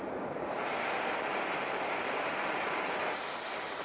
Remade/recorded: recorded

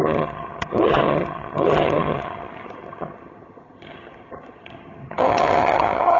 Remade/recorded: remade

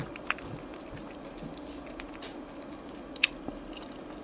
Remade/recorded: recorded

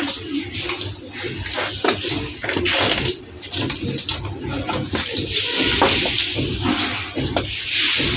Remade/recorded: recorded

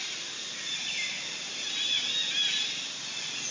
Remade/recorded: recorded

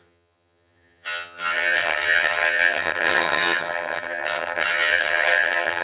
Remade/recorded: remade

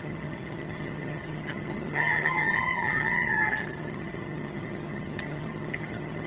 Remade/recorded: remade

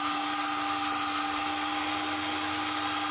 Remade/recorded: recorded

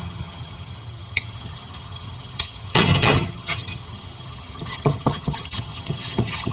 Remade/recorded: remade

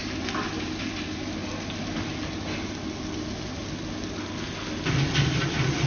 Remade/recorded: recorded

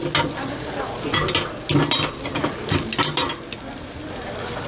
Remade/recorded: recorded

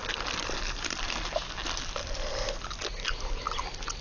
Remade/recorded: recorded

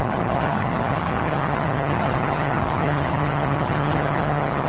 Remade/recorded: remade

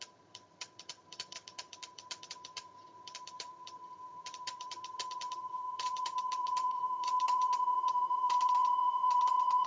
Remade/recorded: remade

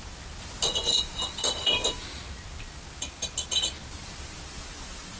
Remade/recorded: recorded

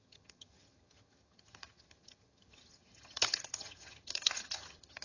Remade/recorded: remade